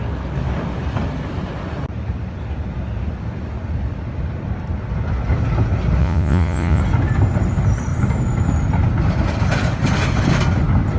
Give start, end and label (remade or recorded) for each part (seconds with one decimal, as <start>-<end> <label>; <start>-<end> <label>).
0.0-6.0 recorded; 6.0-6.8 remade; 6.8-11.0 recorded